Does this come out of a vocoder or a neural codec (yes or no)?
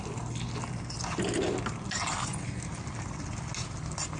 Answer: no